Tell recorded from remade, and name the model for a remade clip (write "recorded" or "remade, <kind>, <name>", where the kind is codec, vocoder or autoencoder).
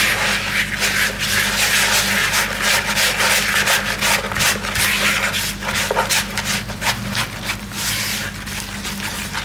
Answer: recorded